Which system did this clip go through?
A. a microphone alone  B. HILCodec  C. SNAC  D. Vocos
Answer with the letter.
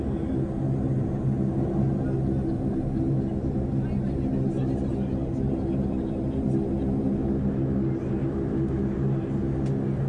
A